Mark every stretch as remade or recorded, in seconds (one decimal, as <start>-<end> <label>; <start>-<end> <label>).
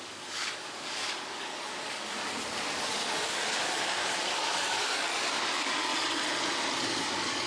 0.0-2.2 remade; 2.2-2.8 recorded; 2.8-5.9 remade; 5.9-6.8 recorded; 6.8-7.5 remade